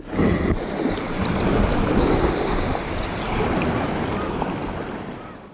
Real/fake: real